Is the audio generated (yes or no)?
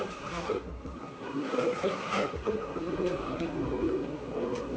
yes